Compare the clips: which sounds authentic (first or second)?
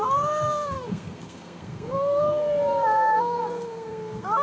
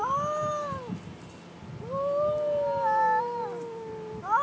second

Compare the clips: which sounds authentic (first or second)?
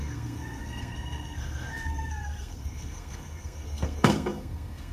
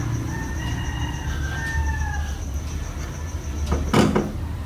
second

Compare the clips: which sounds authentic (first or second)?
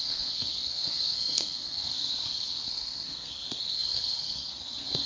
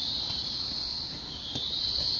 second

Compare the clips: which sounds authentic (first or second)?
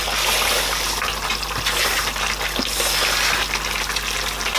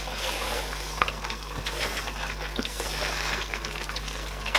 first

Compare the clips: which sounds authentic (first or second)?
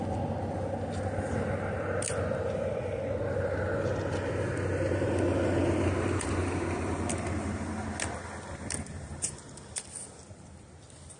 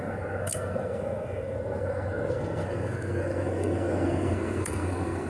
first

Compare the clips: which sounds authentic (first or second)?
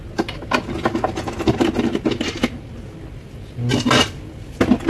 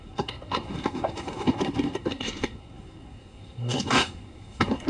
first